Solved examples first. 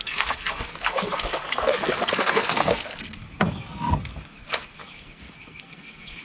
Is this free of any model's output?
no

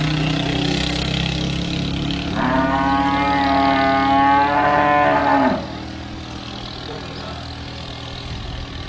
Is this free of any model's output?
yes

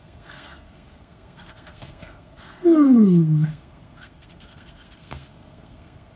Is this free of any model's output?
no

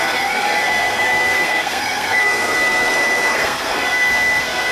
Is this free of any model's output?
no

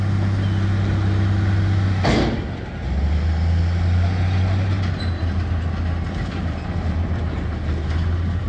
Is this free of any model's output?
yes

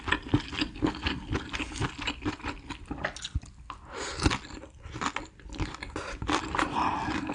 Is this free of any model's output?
yes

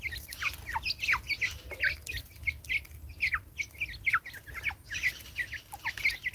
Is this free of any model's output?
yes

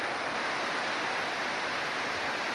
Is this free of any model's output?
yes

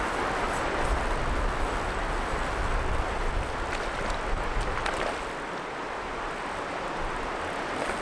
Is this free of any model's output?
yes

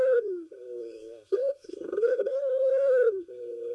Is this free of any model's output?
no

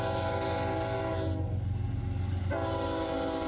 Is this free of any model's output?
yes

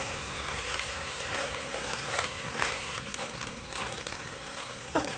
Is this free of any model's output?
no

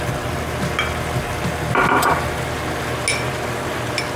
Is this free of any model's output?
yes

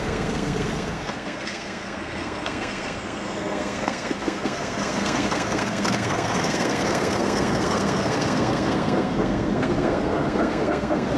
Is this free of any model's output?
no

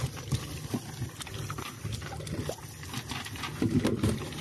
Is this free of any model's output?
yes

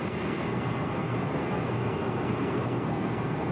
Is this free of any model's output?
no